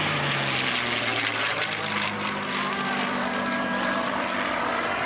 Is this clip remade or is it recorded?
remade